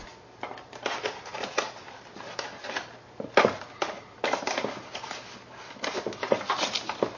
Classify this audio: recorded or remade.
recorded